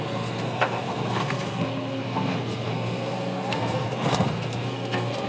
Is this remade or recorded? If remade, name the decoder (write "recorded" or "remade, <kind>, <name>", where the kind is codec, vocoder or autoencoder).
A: remade, codec, SNAC